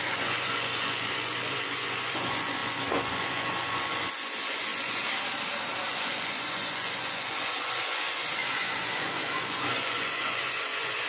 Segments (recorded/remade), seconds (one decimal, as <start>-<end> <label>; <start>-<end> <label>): 0.0-5.0 remade; 5.0-5.9 recorded; 5.9-11.1 remade